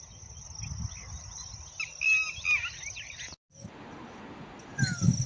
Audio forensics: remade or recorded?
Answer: recorded